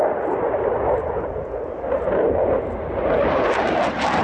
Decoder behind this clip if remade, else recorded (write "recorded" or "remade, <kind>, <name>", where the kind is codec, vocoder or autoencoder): recorded